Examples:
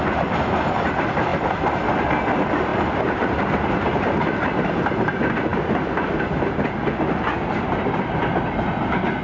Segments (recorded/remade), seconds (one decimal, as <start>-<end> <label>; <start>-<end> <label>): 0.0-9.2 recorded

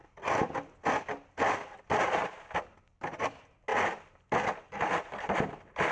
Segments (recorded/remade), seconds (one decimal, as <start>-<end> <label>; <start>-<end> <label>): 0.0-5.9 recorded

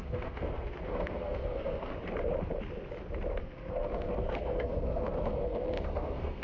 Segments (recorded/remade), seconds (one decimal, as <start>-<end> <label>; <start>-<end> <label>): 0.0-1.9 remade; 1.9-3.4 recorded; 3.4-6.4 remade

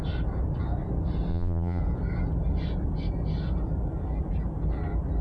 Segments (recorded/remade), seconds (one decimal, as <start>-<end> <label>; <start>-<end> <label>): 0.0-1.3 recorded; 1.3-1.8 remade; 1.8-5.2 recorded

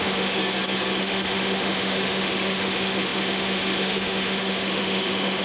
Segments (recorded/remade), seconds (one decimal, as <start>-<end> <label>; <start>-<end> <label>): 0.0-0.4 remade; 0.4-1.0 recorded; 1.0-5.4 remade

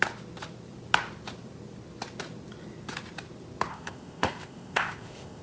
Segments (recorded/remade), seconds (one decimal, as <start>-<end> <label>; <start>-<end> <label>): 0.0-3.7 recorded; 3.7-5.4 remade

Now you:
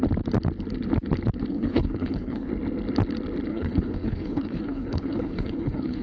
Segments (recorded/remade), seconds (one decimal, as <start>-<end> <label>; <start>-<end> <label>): 0.0-1.5 recorded; 1.5-2.5 remade; 2.5-3.5 recorded; 3.5-6.0 remade

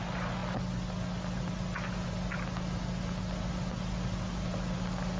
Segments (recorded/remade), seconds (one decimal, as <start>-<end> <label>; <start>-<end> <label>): 0.0-5.2 recorded